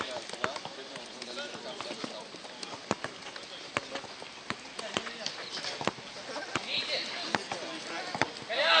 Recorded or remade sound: recorded